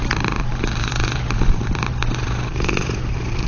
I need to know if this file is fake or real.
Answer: fake